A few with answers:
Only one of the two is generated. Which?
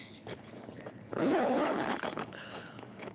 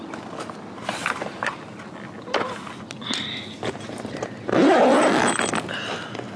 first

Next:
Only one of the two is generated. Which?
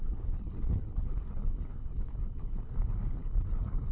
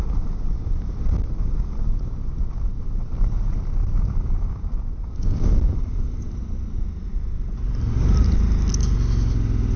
first